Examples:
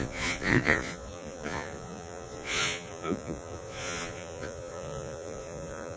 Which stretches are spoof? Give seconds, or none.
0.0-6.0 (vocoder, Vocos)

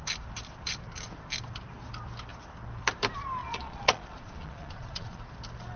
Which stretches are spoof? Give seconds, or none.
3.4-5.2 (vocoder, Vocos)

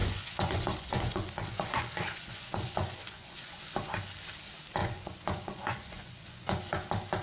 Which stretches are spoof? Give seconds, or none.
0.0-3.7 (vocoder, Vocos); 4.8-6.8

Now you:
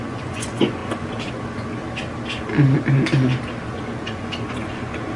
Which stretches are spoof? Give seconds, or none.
0.0-1.8 (vocoder, Vocos); 3.7-5.2

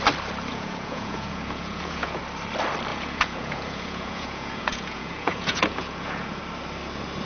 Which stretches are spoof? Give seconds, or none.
0.5-2.2 (vocoder, Vocos); 2.9-6.4

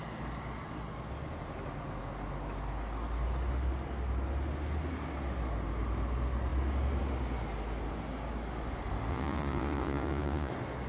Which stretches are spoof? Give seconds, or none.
9.1-10.5 (vocoder, Vocos)